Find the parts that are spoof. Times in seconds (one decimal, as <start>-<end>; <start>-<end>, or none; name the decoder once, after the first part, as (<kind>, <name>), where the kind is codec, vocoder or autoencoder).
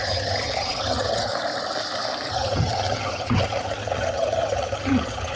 0.0-1.3 (vocoder, HiFi-GAN); 2.3-5.4